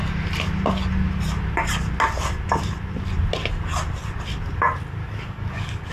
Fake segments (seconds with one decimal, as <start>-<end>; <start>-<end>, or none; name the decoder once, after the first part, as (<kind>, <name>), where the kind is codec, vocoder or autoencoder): 5.0-5.9 (codec, DAC)